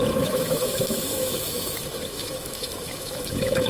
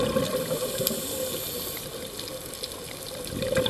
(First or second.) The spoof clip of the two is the first